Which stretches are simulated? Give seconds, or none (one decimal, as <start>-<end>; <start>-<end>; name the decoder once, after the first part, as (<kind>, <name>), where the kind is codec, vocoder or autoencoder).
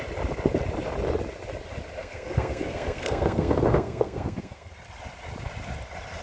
2.0-4.7 (codec, SNAC)